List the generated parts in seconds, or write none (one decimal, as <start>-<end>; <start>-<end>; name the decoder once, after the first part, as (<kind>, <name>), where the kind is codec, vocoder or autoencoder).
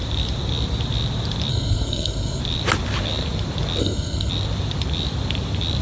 1.5-2.4 (codec, SNAC); 3.8-4.3